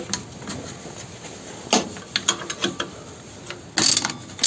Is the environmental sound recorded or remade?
recorded